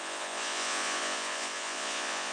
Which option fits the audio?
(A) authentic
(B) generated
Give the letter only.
B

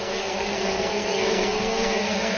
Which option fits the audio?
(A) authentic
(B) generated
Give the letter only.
B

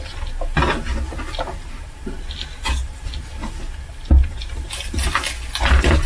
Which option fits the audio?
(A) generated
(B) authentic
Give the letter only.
B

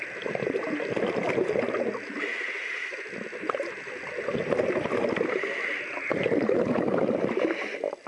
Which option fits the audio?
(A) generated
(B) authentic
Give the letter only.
B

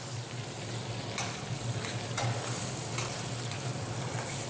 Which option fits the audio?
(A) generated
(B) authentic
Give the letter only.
A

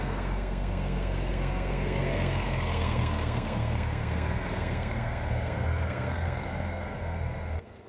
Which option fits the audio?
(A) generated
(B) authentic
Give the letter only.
A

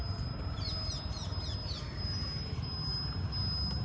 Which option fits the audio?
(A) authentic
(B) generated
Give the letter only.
A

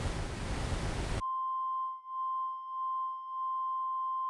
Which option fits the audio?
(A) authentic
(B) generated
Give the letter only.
A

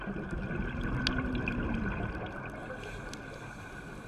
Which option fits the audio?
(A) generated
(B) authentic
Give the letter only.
B